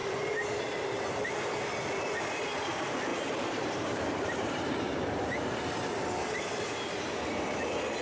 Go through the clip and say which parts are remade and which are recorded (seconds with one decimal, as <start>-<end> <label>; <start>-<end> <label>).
0.0-0.6 remade; 0.6-3.1 recorded; 3.1-7.0 remade; 7.0-8.0 recorded